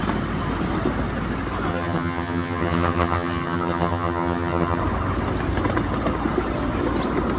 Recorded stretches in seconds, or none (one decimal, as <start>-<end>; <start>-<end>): 0.0-1.7; 4.8-7.4